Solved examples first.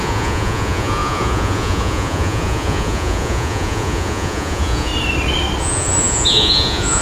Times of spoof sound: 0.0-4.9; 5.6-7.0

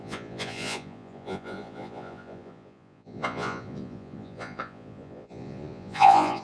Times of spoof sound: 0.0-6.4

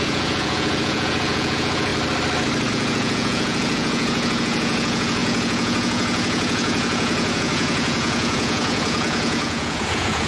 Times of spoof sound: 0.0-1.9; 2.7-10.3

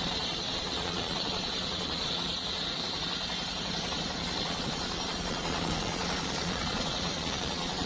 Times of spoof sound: 0.0-2.6; 4.2-7.9